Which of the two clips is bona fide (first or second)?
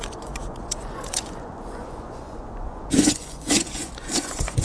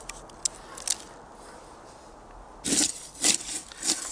second